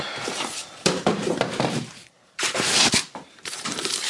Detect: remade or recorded remade